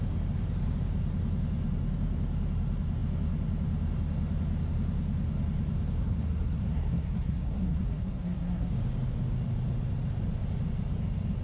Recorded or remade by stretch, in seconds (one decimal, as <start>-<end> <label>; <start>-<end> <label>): 0.0-6.0 recorded; 6.0-8.7 remade; 8.7-11.4 recorded